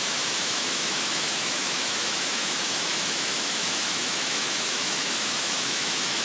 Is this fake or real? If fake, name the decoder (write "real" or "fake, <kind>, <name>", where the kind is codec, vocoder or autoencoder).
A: fake, autoencoder, DAC-VAE